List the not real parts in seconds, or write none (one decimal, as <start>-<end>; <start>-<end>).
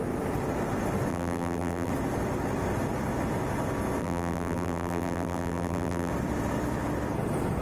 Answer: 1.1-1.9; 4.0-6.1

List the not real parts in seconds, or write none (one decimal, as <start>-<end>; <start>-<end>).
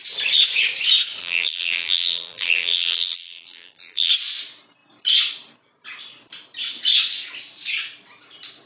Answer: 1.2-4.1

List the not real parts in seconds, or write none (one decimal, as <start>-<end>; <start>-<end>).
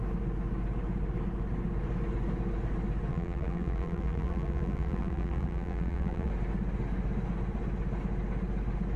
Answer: 3.1-6.3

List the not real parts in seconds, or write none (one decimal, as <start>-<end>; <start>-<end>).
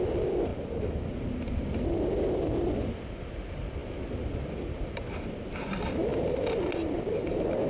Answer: none